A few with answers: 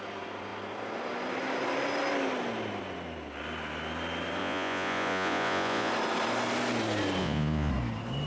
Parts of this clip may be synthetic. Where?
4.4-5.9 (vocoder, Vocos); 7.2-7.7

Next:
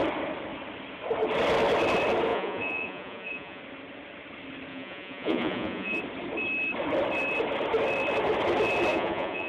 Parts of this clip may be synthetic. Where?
2.3-3.6 (vocoder, Vocos); 4.7-6.0; 8.9-9.5

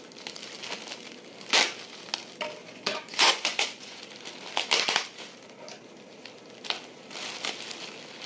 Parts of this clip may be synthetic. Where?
2.6-4.0 (vocoder, Vocos)